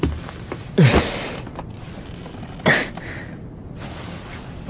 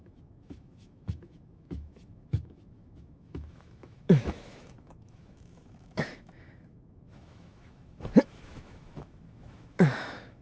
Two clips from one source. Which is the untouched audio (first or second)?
first